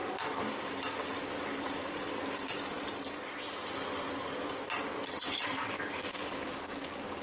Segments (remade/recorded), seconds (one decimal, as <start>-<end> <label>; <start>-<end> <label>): 0.0-4.1 remade; 4.1-7.2 recorded